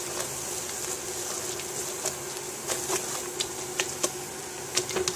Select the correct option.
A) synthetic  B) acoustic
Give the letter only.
B